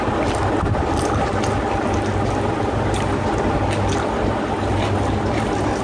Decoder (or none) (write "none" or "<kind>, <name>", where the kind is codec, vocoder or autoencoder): none